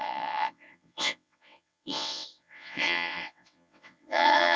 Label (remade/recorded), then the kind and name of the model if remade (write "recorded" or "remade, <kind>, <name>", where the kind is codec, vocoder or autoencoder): remade, vocoder, WaveNeXt